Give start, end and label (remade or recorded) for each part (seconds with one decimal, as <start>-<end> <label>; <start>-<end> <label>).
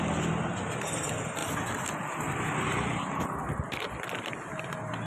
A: 0.0-5.1 recorded